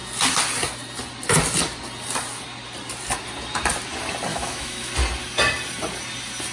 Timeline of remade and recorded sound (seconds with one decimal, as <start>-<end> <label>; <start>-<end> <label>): 0.0-4.3 recorded; 4.3-4.9 remade; 4.9-6.5 recorded